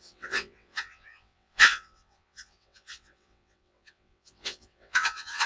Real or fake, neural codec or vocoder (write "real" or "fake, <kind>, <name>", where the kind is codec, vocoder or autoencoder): fake, vocoder, WaveNeXt